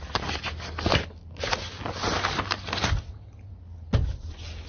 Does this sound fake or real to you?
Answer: real